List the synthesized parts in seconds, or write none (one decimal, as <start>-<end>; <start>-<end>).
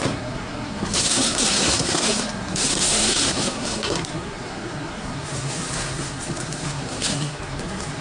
0.0-8.0